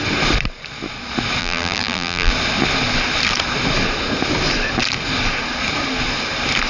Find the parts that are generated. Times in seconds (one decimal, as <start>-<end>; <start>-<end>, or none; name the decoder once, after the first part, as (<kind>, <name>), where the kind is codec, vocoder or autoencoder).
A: 1.4-2.3 (vocoder, BigVGAN v2)